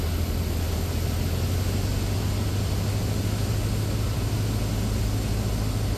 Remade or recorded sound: recorded